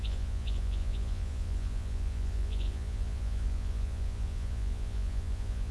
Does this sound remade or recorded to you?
remade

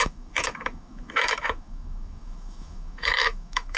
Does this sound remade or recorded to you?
remade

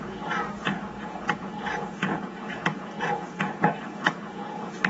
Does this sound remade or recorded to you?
remade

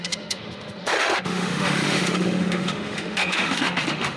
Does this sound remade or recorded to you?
remade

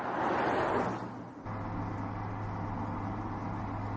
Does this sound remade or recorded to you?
recorded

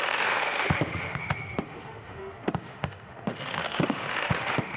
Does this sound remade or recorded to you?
remade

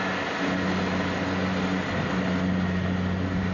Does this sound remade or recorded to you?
recorded